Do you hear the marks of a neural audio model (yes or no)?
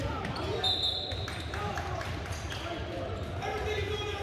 no